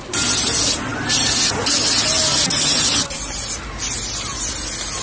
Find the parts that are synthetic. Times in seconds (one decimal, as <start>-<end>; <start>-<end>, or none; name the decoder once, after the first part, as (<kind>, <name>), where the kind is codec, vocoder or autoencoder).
none